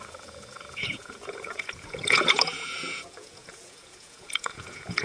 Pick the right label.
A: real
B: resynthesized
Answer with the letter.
B